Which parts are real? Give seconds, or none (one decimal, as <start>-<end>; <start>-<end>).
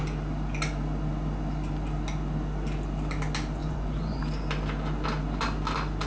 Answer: 0.0-3.6; 4.2-6.1